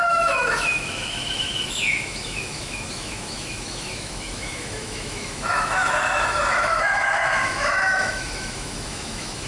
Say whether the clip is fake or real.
fake